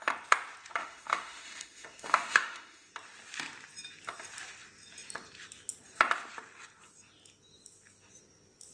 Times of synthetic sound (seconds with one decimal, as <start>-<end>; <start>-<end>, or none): 0.8-2.9